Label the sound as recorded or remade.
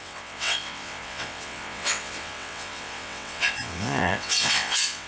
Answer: remade